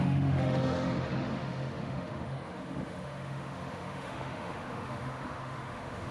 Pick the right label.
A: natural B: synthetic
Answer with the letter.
B